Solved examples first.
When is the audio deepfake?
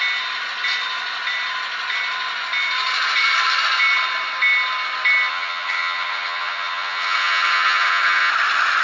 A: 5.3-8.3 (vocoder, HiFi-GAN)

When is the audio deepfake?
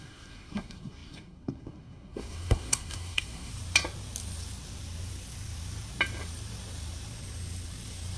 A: 0.0-3.5 (codec, SNAC)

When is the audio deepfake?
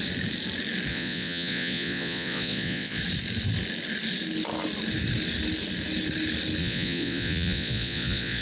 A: 0.9-3.0 (vocoder, Vocos); 6.6-8.4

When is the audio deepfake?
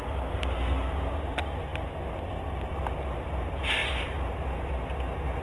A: 1.7-2.4 (vocoder, BigVGAN v2)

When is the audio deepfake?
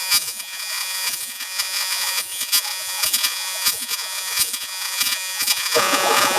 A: 0.0-6.4 (vocoder, Vocos)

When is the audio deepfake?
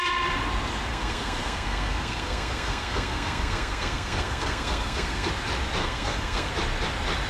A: 0.9-5.3 (codec, SNAC); 5.8-6.5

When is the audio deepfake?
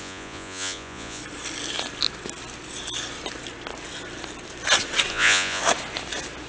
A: 0.0-1.2 (vocoder, Vocos); 5.1-5.6